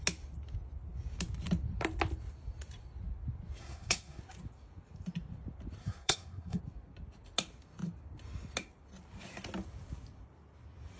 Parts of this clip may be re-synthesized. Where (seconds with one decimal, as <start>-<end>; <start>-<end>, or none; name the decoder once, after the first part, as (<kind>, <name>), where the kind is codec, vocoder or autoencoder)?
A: 3.6-4.2 (codec, SNAC); 5.8-6.6